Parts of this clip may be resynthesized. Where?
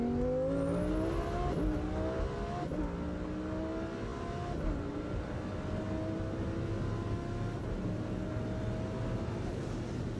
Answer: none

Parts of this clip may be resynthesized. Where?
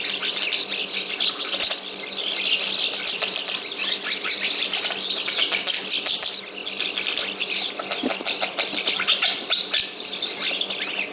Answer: none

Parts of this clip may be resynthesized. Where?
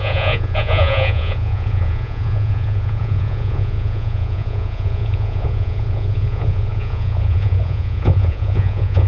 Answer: 0.0-9.1 (vocoder, Vocos)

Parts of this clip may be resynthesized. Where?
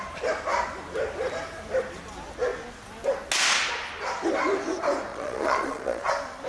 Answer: 5.1-6.1 (vocoder, Vocos)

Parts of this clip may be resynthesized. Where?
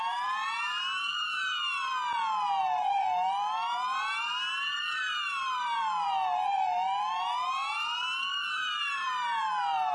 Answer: 0.0-1.9 (vocoder, BigVGAN v2); 2.6-9.9